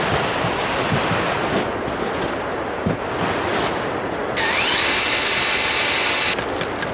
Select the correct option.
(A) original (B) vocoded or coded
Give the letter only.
A